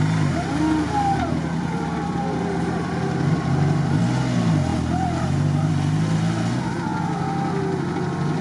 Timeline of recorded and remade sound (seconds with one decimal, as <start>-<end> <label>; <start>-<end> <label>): 0.0-1.3 recorded; 1.3-4.0 remade; 4.0-4.7 recorded; 4.7-5.7 remade; 5.7-8.4 recorded